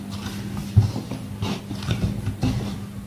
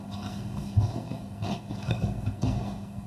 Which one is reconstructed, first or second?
second